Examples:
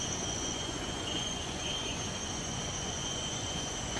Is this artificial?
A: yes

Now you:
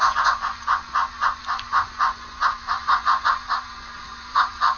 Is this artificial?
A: yes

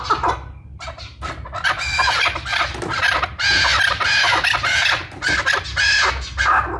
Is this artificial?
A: no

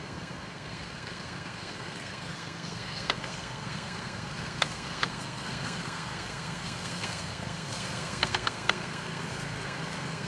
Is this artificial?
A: yes